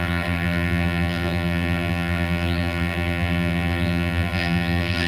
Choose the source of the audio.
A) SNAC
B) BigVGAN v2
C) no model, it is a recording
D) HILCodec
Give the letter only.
B